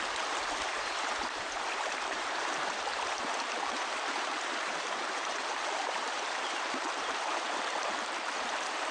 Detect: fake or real fake